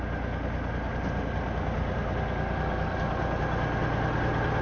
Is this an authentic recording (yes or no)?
yes